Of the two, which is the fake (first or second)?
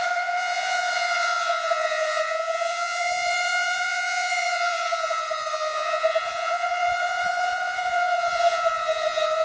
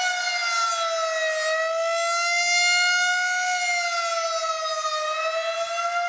first